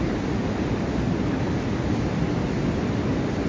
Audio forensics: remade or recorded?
recorded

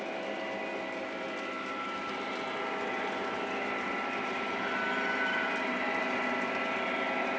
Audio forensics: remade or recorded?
recorded